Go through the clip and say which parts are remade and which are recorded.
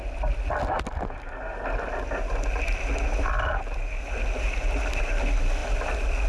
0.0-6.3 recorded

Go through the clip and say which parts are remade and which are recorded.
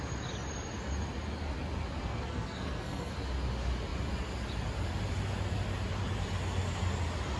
0.0-2.0 recorded; 2.0-3.1 remade; 3.1-7.4 recorded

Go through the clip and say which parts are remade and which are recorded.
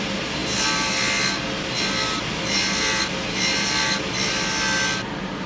0.0-5.5 recorded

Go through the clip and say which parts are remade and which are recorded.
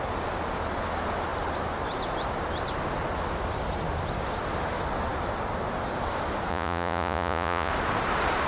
0.0-6.5 recorded; 6.5-7.7 remade; 7.7-8.5 recorded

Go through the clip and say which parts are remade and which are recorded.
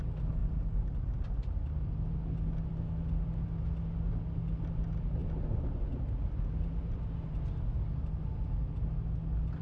0.0-9.6 recorded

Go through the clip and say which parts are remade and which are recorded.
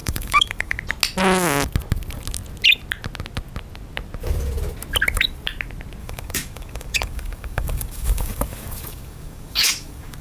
0.0-0.8 remade; 0.8-6.0 recorded; 6.0-10.2 remade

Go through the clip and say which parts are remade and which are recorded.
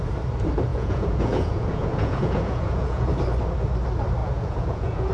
0.0-0.7 recorded; 0.7-3.1 remade; 3.1-4.2 recorded; 4.2-5.1 remade